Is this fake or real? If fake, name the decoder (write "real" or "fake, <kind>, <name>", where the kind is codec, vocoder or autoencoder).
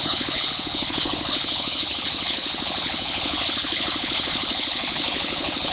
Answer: fake, codec, HILCodec